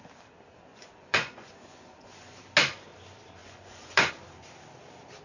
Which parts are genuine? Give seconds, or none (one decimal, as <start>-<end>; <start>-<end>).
0.0-0.7; 2.4-3.4; 4.1-5.2